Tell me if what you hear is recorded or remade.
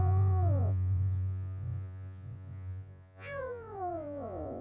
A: remade